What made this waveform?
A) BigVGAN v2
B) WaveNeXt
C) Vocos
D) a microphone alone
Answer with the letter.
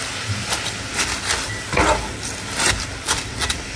D